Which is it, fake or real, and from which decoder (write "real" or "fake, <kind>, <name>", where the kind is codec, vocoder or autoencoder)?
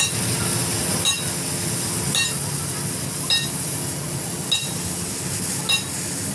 real